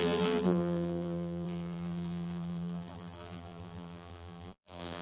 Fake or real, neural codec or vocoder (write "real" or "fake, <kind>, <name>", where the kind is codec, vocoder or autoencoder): fake, vocoder, BigVGAN v2